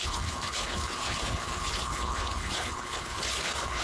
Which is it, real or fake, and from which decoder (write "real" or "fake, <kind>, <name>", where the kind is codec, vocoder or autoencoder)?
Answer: fake, codec, HILCodec